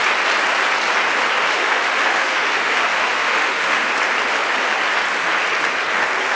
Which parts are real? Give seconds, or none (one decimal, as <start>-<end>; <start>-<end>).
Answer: 0.0-1.4; 3.9-6.3